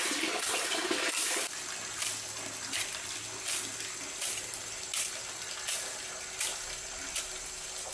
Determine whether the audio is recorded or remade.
recorded